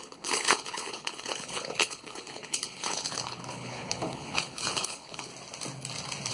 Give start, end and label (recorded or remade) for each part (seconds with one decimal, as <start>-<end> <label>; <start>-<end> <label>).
0.0-5.3 remade; 5.3-6.3 recorded